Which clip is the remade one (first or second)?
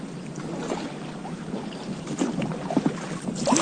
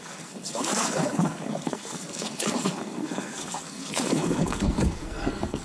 second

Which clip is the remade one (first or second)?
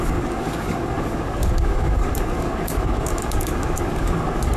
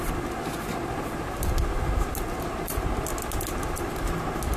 first